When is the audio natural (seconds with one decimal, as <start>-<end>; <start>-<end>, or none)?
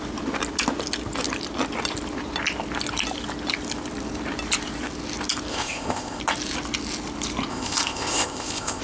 0.0-5.5; 6.2-7.5